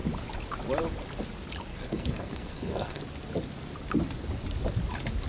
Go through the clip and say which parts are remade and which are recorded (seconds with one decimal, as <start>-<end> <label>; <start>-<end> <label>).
0.0-1.7 recorded; 1.7-3.0 remade; 3.0-5.3 recorded